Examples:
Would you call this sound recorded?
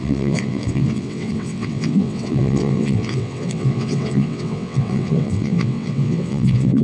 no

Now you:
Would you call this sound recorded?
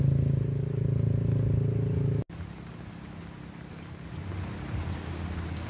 yes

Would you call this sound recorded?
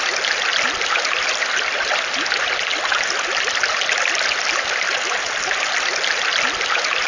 yes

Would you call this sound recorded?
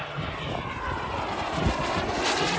yes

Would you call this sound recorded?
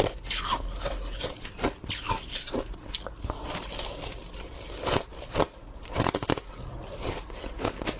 yes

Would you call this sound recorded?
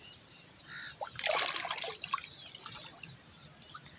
no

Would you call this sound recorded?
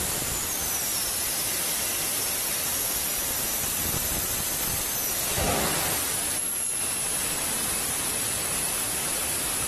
no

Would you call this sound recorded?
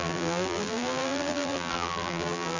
no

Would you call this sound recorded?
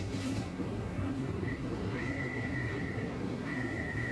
no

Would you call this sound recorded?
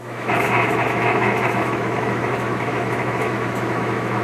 no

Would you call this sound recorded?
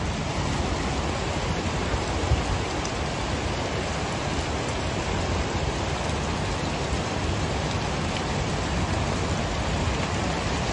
yes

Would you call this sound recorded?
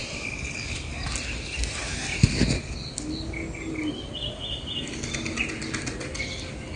yes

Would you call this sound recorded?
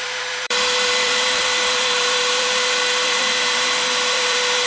no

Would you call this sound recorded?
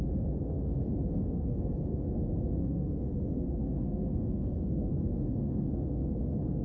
no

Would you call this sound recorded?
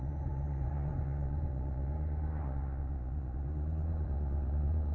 no